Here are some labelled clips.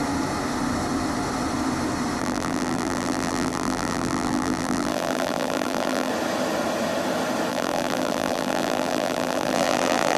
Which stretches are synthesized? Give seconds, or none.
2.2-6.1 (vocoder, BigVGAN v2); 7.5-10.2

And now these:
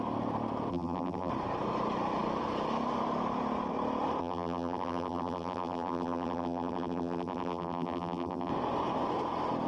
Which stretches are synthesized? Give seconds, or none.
0.7-1.3 (vocoder, BigVGAN v2); 4.2-8.5

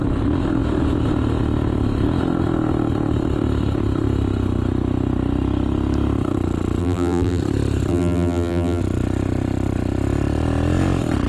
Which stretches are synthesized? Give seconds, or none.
6.8-7.4 (vocoder, BigVGAN v2); 7.9-8.8

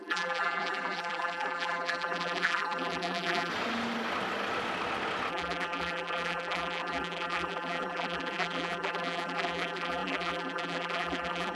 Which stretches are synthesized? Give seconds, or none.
0.0-3.5 (vocoder, BigVGAN v2); 5.3-11.6